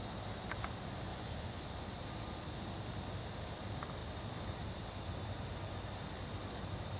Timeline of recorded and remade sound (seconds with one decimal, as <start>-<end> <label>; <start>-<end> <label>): 0.0-1.1 recorded; 1.1-1.6 remade; 1.6-7.0 recorded